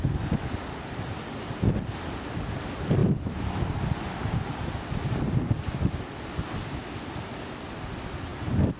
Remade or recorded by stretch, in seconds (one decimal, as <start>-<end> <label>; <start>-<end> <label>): 0.0-8.8 recorded